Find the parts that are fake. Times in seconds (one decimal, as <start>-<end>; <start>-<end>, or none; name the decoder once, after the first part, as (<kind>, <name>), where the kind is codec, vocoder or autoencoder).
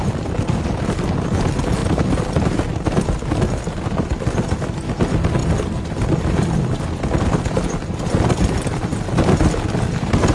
1.8-2.4 (vocoder, BigVGAN v2); 5.4-6.6